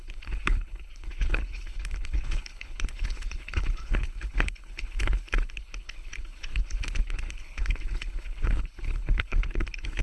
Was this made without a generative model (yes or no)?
no